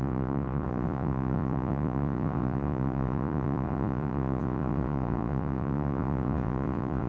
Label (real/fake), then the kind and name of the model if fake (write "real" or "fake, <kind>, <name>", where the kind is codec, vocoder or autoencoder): fake, vocoder, Vocos